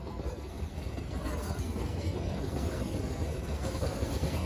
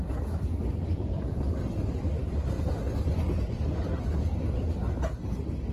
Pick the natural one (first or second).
second